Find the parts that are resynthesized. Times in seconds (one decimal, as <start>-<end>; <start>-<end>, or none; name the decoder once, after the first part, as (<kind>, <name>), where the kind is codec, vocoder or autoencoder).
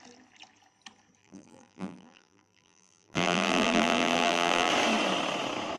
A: 1.2-4.7 (vocoder, BigVGAN v2)